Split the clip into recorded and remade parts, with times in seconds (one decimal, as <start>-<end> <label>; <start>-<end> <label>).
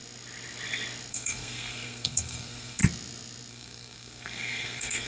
0.0-1.1 recorded; 1.1-2.8 remade; 2.8-3.5 recorded; 3.5-5.1 remade